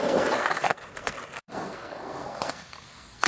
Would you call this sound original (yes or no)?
no